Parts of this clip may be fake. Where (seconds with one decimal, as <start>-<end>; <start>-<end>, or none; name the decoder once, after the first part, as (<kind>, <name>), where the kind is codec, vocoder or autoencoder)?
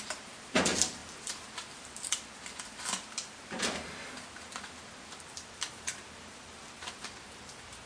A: none